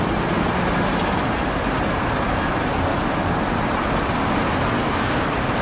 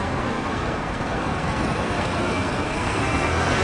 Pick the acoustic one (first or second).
first